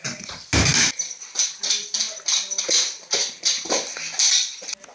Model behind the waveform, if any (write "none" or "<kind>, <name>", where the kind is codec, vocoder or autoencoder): none